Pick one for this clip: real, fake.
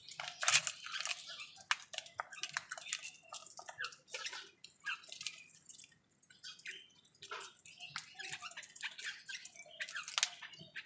real